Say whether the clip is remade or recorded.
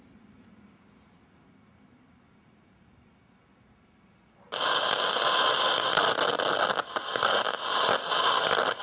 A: recorded